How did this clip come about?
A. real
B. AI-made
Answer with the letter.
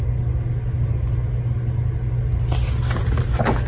A